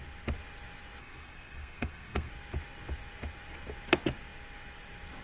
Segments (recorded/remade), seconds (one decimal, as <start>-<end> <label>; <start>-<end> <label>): 0.0-1.0 recorded; 1.0-2.3 remade; 2.3-5.2 recorded